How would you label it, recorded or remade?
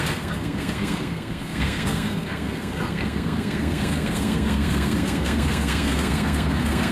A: remade